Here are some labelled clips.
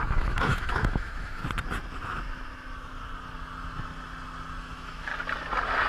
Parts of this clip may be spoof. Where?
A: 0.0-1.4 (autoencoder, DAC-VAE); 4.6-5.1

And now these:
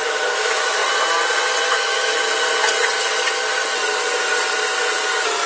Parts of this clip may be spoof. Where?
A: 0.0-0.8 (autoencoder, DAC-VAE); 1.7-2.1

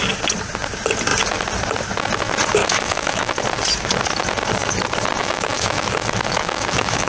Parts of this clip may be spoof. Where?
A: 2.6-3.3 (autoencoder, DAC-VAE); 5.2-7.1

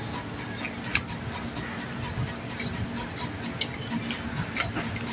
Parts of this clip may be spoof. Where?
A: none

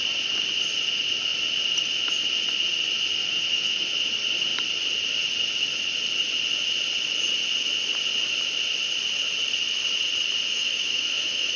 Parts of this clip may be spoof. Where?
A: 3.2-3.8 (autoencoder, DAC-VAE); 10.5-11.6

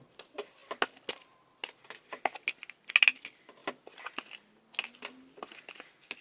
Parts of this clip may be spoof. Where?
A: none